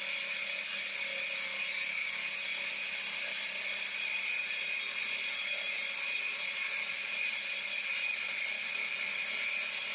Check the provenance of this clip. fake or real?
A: real